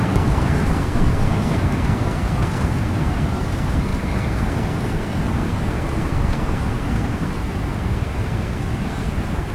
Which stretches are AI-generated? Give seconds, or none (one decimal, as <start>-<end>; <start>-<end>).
0.0-9.5